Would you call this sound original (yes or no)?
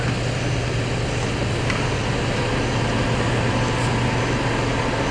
yes